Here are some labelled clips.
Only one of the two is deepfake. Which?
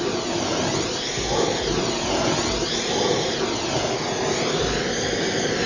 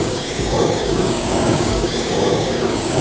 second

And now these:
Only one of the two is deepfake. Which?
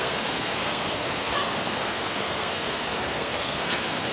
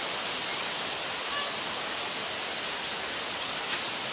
first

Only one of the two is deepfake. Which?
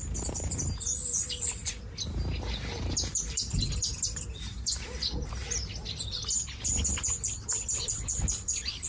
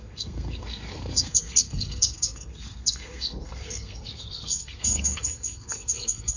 second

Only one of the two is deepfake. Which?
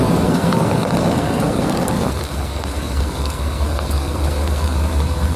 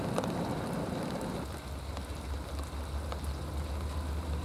first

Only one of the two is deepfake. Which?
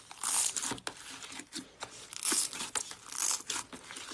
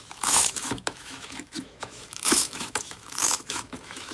second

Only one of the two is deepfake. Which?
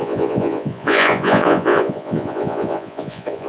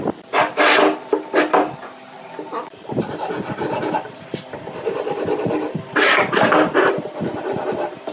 first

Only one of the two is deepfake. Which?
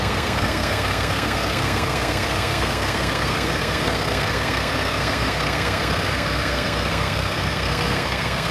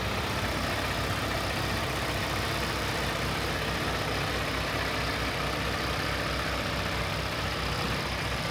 first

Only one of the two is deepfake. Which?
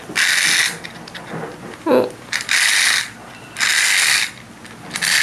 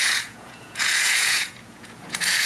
second